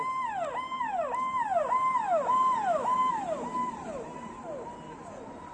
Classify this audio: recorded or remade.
recorded